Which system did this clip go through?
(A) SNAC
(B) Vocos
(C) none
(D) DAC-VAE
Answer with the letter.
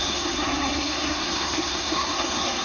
A